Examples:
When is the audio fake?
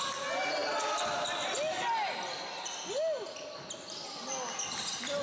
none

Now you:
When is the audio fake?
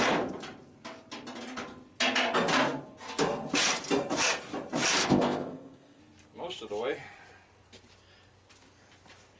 5.0-6.0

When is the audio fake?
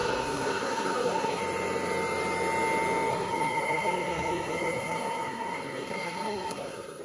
0.0-1.4; 3.1-7.0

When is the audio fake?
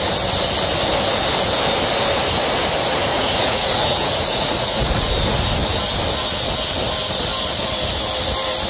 3.1-5.1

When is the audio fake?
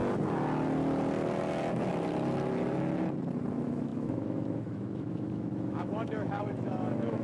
3.5-7.2